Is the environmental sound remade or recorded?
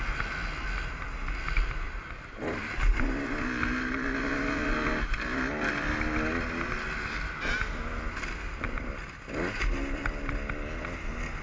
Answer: recorded